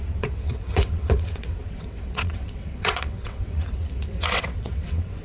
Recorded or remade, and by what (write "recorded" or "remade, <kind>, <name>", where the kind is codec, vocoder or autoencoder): remade, vocoder, WaveNeXt